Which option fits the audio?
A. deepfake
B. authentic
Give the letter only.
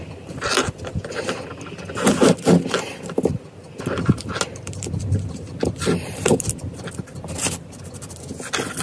B